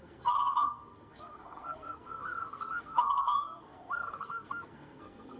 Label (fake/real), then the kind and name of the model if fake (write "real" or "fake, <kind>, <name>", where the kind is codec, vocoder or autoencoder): fake, codec, SNAC